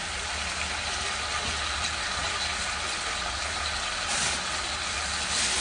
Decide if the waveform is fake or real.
real